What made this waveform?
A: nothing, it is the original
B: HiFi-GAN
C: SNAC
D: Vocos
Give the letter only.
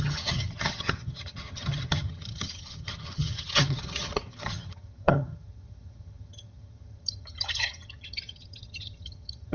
B